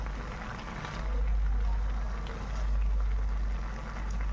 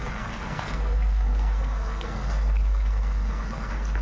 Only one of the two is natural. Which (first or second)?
first